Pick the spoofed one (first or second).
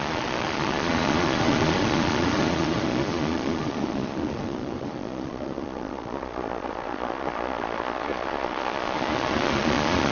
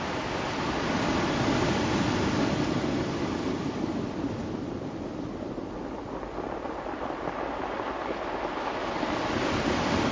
first